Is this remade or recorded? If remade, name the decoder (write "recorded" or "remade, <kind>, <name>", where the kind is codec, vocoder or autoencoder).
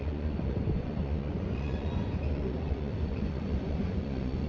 remade, vocoder, Vocos